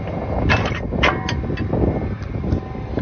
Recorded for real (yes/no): yes